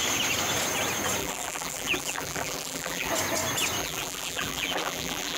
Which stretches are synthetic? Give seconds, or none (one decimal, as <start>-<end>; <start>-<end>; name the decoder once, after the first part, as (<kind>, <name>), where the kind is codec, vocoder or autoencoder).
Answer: 1.2-3.1 (vocoder, BigVGAN v2); 3.8-5.4